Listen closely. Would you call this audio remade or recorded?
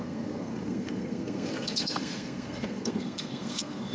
remade